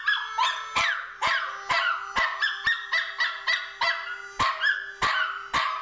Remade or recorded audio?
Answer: recorded